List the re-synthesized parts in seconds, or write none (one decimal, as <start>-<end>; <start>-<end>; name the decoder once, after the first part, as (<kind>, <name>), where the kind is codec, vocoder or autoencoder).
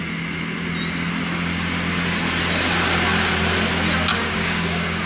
4.1-5.1 (codec, DAC)